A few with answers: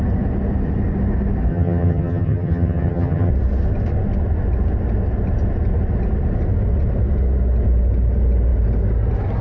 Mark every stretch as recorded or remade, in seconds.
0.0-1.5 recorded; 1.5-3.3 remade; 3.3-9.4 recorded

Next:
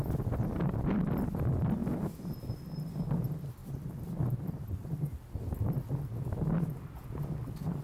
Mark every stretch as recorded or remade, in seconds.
0.0-3.6 recorded; 3.6-5.9 remade; 5.9-7.8 recorded

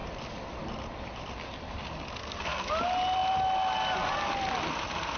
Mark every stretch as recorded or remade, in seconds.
0.0-2.2 recorded; 2.2-2.7 remade; 2.7-5.2 recorded

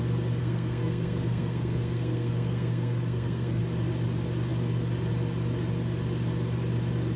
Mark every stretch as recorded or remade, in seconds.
0.0-0.4 recorded; 0.4-3.6 remade; 3.6-7.2 recorded